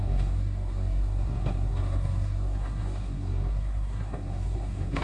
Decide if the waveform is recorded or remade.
remade